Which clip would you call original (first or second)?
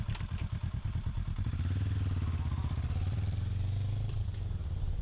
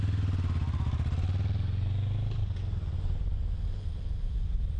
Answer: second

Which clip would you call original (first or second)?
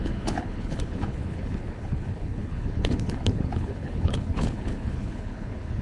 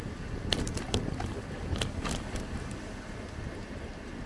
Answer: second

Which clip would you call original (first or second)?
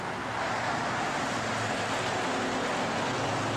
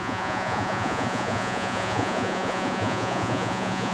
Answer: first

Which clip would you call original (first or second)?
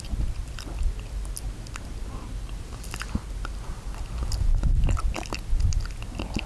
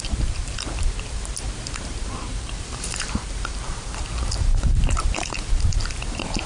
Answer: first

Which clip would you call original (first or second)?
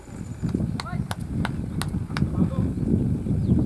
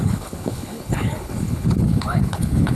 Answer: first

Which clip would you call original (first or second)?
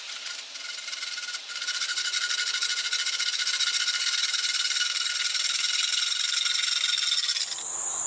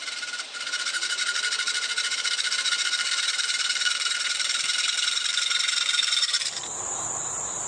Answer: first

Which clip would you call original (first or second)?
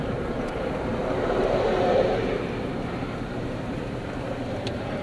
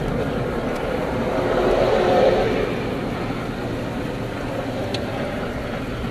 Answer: second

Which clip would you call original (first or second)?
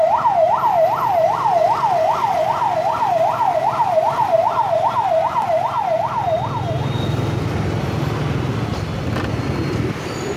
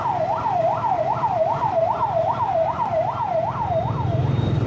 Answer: first